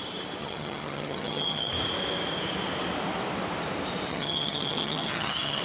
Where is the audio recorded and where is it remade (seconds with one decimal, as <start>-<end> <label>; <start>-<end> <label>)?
0.0-0.4 recorded; 0.4-1.7 remade; 1.7-4.1 recorded; 4.1-5.6 remade